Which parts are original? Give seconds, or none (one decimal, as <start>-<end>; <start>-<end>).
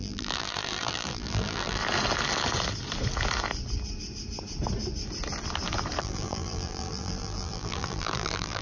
1.8-6.0